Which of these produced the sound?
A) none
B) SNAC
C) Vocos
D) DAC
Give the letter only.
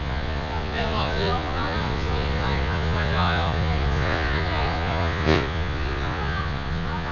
C